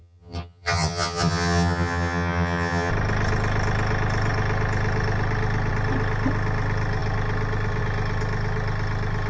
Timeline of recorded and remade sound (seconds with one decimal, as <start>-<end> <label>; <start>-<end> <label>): 0.0-2.9 remade; 2.9-9.3 recorded